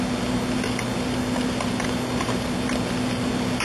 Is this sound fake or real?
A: real